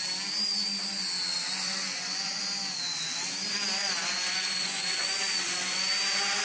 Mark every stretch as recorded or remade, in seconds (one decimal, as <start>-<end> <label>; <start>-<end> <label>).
0.0-1.5 recorded; 1.5-2.4 remade; 2.4-3.8 recorded; 3.8-5.9 remade; 5.9-6.4 recorded